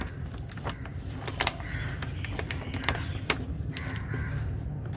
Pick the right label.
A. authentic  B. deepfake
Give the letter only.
A